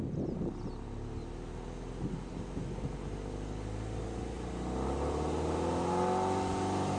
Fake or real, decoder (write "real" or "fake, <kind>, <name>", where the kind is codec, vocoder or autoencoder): real